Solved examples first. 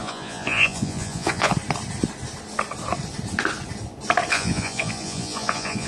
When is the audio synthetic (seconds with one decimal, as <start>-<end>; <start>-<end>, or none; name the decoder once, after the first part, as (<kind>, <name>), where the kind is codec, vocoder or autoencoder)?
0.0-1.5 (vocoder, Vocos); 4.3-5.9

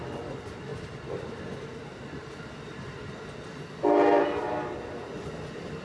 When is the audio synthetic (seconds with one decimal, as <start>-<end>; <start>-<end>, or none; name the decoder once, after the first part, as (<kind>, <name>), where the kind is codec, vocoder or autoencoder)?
none

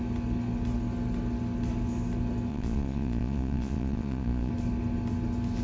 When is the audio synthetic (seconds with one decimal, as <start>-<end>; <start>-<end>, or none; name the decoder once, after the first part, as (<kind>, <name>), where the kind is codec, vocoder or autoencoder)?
2.5-4.5 (vocoder, Vocos)

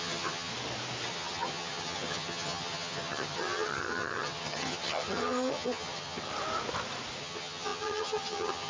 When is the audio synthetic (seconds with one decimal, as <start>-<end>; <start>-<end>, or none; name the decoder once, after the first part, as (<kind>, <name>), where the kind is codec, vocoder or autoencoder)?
0.0-0.5 (vocoder, HiFi-GAN); 1.1-6.3; 7.2-8.7

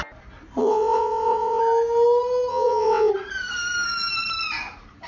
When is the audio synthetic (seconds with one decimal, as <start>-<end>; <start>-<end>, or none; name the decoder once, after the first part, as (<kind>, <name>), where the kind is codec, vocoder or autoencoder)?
0.6-1.6 (vocoder, WaveNeXt); 2.5-3.1

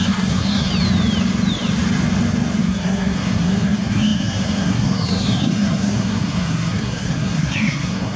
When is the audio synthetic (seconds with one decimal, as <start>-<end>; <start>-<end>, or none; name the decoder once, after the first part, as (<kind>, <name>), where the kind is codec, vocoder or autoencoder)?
0.0-0.7 (codec, SNAC); 2.6-8.2